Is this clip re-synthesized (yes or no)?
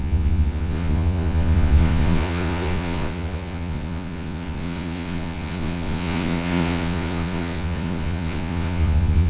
yes